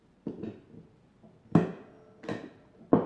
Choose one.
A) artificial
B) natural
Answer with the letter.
B